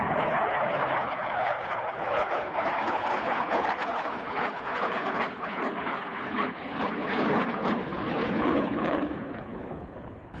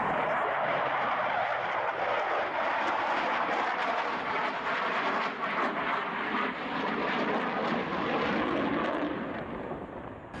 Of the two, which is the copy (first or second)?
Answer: first